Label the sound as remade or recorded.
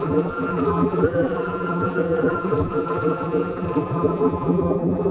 remade